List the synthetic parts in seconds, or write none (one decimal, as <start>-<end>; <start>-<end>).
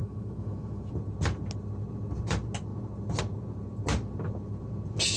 0.0-0.9